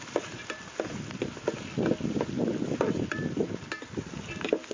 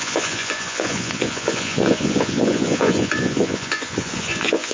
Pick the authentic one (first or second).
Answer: first